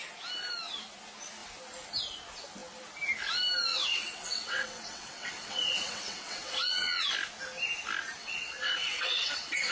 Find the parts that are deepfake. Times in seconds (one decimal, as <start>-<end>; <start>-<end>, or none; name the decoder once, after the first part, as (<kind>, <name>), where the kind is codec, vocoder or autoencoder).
3.7-7.0 (vocoder, WaveNeXt); 8.2-9.7